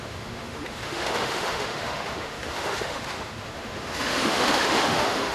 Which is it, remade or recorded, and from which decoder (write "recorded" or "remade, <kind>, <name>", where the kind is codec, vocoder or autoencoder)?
remade, autoencoder, DAC-VAE